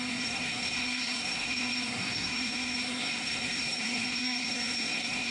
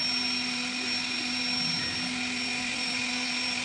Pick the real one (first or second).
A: second